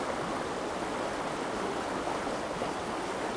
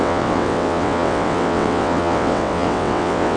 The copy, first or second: second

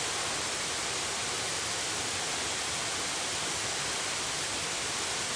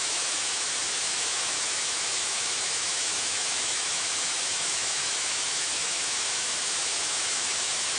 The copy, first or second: second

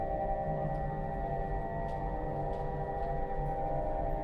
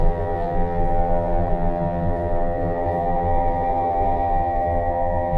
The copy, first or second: second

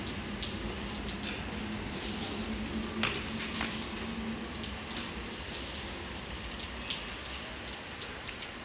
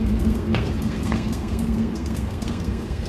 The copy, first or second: second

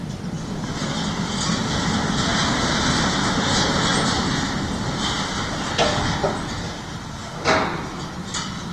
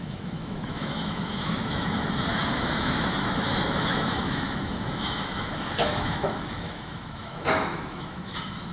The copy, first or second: second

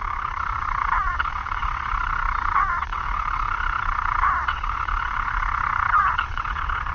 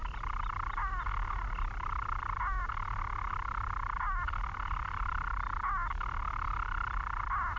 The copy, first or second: first